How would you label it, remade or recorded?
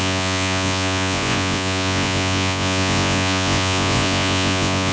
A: remade